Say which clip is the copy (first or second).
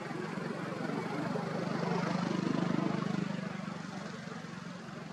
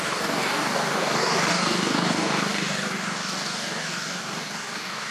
second